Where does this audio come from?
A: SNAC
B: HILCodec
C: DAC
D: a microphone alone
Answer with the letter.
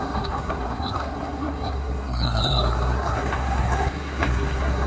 A